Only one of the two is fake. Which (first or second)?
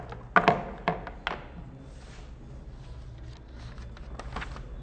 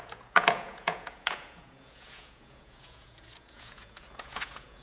second